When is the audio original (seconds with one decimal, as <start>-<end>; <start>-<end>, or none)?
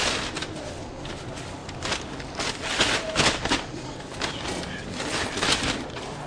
0.0-6.3